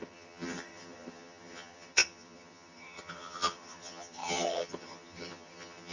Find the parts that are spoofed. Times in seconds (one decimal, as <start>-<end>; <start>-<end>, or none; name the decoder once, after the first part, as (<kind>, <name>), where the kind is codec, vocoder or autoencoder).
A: 0.0-5.9 (vocoder, HiFi-GAN)